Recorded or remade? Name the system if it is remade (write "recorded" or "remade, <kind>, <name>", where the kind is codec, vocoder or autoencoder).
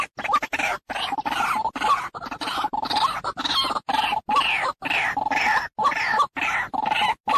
recorded